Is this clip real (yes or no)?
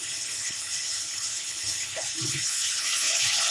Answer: no